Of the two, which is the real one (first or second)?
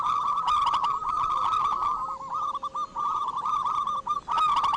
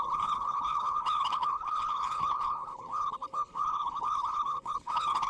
first